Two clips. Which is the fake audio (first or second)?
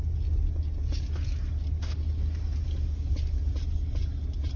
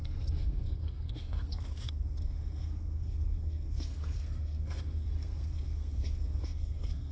second